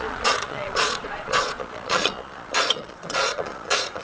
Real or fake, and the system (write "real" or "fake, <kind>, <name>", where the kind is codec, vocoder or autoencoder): fake, vocoder, Vocos